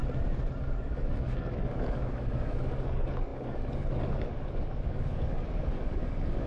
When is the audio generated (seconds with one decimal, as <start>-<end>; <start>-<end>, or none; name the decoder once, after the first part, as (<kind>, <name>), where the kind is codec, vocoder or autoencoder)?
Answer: 0.6-6.5 (codec, DAC)